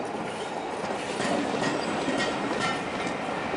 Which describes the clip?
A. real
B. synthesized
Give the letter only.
A